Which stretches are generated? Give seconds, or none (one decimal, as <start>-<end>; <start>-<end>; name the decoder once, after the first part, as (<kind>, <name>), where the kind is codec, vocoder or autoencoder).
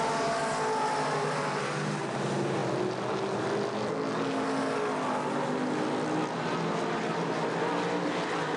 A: none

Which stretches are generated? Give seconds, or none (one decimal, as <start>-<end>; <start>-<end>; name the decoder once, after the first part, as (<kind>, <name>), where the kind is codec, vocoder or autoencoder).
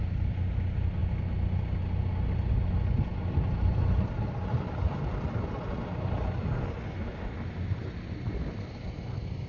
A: none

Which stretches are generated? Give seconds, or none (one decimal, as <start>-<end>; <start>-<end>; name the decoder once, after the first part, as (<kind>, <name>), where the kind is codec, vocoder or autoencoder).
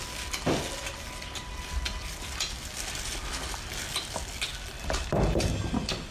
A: none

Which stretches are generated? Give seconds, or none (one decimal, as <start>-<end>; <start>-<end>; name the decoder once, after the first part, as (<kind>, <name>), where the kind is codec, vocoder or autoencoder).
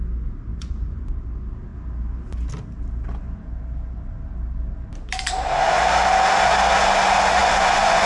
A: 0.5-1.2 (vocoder, Vocos); 7.4-8.1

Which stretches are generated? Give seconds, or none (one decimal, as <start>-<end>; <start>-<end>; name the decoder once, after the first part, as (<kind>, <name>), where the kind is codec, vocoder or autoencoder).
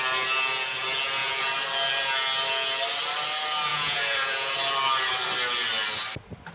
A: 3.7-4.5 (vocoder, Vocos)